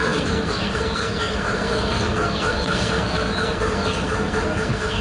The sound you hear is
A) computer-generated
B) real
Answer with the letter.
A